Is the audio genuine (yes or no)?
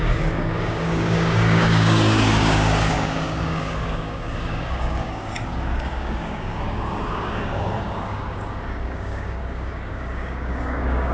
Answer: no